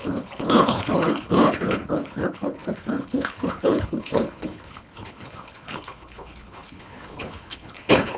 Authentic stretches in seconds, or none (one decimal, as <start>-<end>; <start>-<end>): none